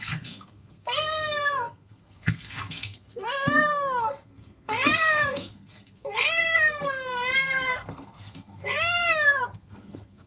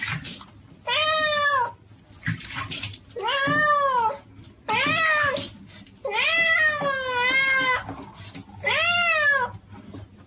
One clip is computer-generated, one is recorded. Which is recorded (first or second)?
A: second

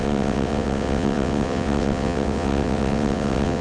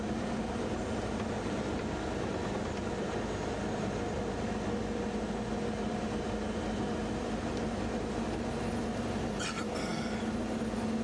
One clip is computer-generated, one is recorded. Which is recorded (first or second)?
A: second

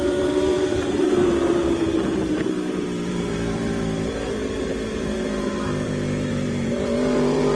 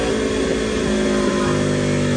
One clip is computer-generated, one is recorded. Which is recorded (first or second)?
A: second